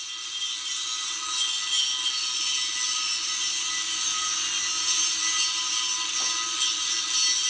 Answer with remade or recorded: recorded